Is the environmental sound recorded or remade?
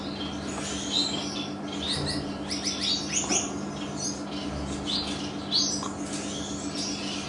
recorded